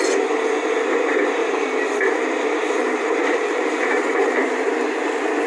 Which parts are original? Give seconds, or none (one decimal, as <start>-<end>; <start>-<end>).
0.0-1.4; 4.7-5.5